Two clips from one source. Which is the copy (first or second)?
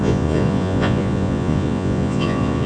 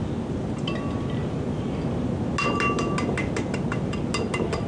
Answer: first